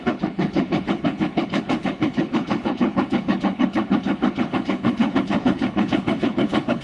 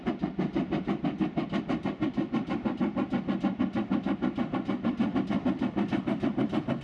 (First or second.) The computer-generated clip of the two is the first